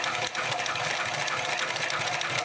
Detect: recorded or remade recorded